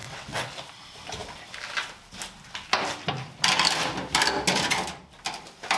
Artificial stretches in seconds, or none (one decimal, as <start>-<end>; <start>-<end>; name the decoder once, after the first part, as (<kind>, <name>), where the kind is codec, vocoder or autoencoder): 0.0-0.5 (vocoder, WaveNeXt)